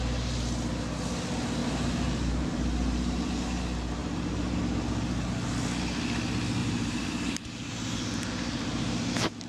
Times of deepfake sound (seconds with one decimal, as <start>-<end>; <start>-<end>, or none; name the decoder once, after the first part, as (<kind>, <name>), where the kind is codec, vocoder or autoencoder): 1.6-3.6 (vocoder, BigVGAN v2); 4.0-4.6; 6.6-9.1